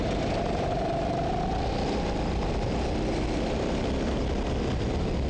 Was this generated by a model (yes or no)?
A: no